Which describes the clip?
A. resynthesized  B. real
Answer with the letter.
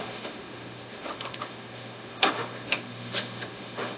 A